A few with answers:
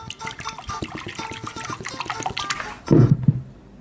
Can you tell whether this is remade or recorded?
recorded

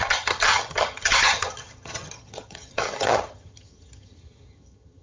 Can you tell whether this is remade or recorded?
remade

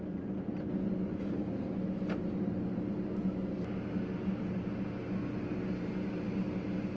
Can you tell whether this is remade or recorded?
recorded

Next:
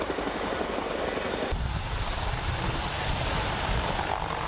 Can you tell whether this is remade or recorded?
recorded